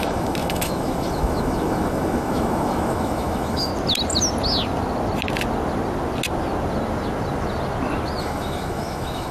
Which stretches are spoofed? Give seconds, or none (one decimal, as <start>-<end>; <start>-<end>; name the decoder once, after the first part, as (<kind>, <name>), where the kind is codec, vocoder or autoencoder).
0.0-3.7 (autoencoder, DAC-VAE); 8.2-9.3